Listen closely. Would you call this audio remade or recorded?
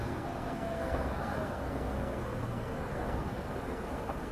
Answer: remade